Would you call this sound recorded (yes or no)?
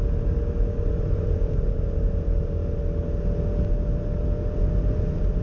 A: yes